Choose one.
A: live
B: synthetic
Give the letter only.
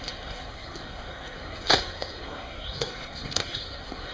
B